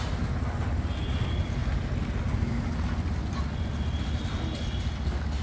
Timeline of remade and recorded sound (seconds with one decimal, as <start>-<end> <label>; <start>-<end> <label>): 0.0-5.4 recorded